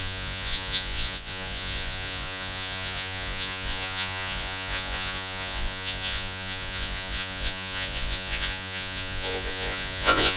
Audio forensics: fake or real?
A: fake